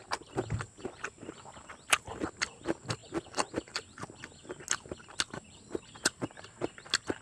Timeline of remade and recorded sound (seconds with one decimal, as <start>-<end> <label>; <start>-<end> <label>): 0.0-7.2 recorded

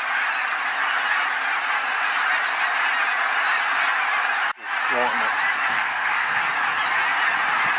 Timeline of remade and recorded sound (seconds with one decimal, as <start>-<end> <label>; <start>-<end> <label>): 0.0-5.7 recorded; 5.7-6.4 remade; 6.4-7.8 recorded

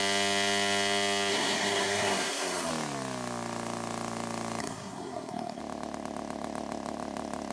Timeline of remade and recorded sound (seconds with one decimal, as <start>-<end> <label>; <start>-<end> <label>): 0.0-1.3 recorded; 1.3-2.7 remade; 2.7-4.6 recorded; 4.6-5.6 remade; 5.6-7.5 recorded

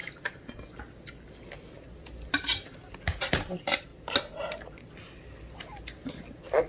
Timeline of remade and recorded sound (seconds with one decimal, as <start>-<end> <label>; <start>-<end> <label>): 0.0-6.7 recorded

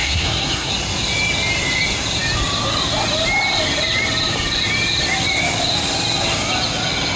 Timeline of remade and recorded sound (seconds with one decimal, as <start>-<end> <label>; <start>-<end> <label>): 0.0-0.7 remade; 0.7-7.2 recorded

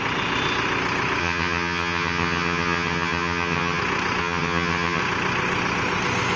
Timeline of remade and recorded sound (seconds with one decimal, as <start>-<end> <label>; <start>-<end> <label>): 0.0-1.2 recorded; 1.2-3.8 remade; 3.8-4.2 recorded; 4.2-5.0 remade; 5.0-6.4 recorded